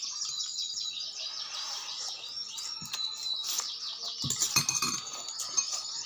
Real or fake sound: real